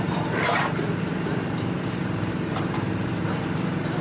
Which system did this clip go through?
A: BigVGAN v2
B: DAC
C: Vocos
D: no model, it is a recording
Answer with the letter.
A